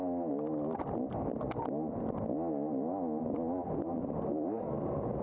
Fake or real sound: real